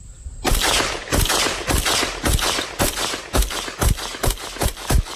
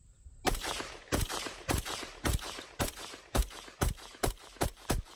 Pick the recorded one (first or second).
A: first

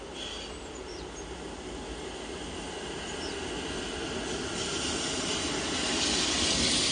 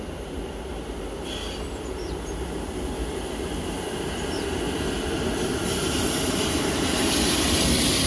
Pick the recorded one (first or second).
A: first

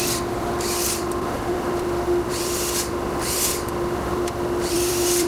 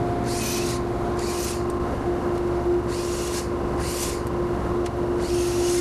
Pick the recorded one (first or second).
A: second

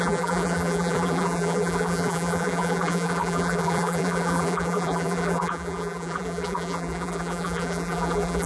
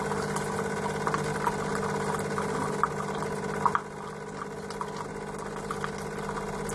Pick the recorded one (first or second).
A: second